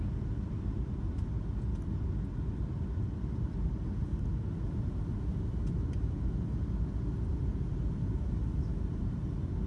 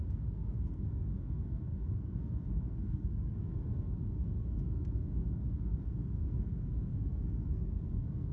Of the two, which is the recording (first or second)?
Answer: first